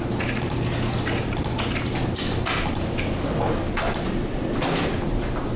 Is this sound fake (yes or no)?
no